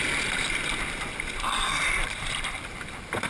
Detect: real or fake real